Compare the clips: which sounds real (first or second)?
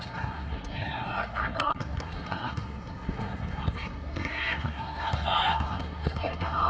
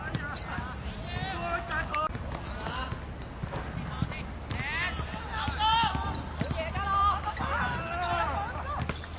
second